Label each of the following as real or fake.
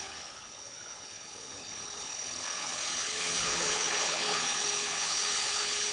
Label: fake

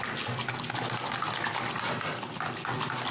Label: real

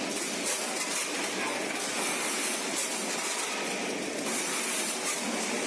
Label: real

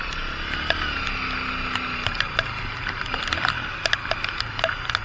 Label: real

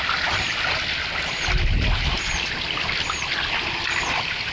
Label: real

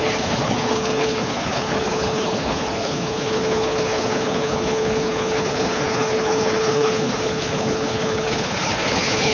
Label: fake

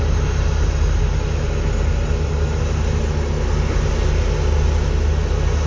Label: real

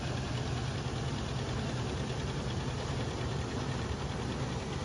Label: real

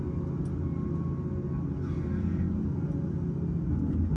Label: real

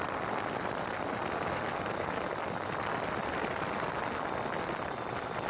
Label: real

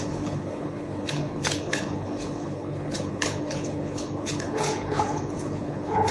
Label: fake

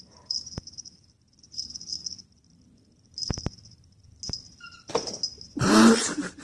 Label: real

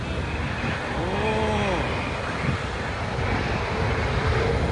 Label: real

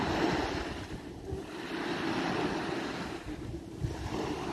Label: real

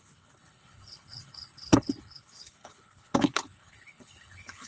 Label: fake